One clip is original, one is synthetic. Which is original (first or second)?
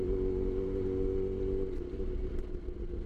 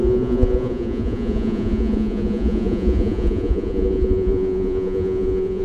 first